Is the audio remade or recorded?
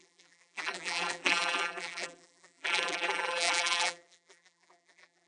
remade